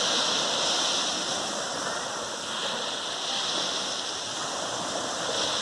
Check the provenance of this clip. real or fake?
real